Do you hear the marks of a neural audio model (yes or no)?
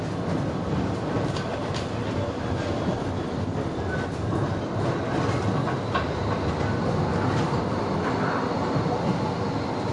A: no